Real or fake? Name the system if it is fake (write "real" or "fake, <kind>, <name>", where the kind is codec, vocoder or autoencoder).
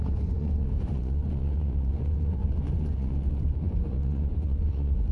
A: fake, vocoder, Vocos